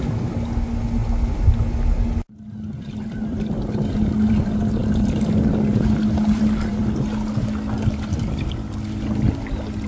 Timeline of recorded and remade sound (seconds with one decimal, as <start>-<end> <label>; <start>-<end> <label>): 0.0-9.9 recorded